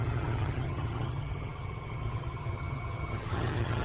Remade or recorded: remade